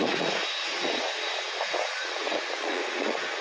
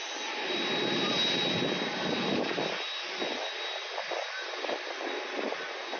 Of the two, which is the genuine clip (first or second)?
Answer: second